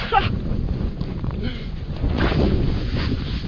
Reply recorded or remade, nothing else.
remade